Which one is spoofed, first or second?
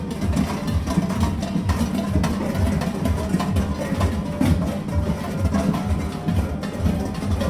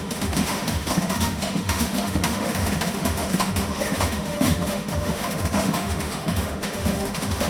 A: second